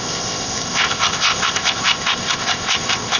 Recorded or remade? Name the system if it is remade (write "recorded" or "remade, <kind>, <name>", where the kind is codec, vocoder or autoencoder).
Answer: remade, codec, ZipCodec